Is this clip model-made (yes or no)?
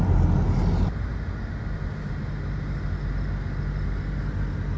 no